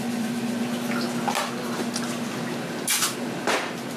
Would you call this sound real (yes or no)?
yes